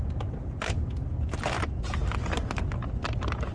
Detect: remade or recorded recorded